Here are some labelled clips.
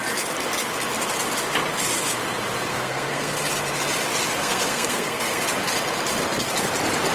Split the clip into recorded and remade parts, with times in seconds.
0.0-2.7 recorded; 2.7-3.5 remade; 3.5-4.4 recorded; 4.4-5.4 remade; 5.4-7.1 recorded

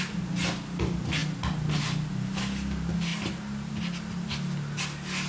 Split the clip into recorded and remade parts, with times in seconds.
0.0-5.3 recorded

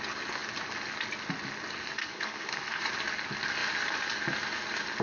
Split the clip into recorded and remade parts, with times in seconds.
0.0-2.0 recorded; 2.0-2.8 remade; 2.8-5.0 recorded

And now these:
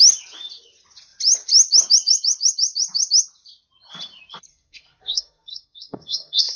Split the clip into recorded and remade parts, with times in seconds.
0.0-4.5 recorded; 4.5-6.6 remade

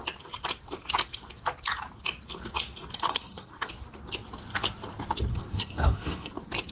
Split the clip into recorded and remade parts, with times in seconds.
0.0-3.1 recorded; 3.1-3.7 remade; 3.7-5.3 recorded; 5.3-6.3 remade; 6.3-6.7 recorded

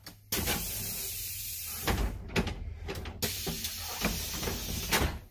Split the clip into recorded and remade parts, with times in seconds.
0.0-1.6 recorded; 1.6-3.2 remade; 3.2-5.3 recorded

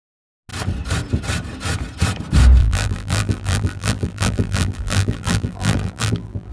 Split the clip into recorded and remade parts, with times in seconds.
0.0-2.6 recorded; 2.6-6.5 remade

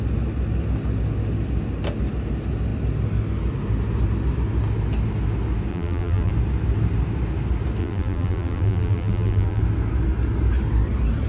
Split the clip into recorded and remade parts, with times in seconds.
0.0-5.7 recorded; 5.7-6.3 remade; 6.3-7.8 recorded; 7.8-9.6 remade; 9.6-11.3 recorded